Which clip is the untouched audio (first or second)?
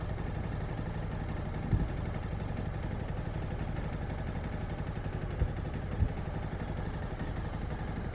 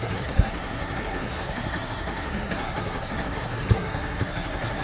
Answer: first